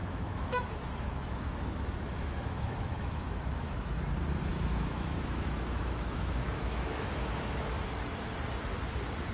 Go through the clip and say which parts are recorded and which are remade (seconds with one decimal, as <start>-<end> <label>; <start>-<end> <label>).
0.0-4.0 remade; 4.0-4.5 recorded; 4.5-7.6 remade; 7.6-9.3 recorded